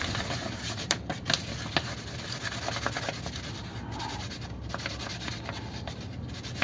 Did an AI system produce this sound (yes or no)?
no